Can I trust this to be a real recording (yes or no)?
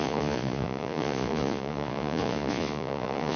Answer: no